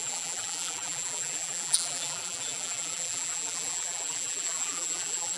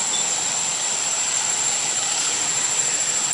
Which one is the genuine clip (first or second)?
second